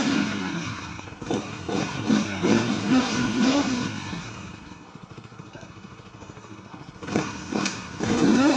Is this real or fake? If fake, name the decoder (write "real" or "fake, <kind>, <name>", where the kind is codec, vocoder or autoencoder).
fake, codec, SNAC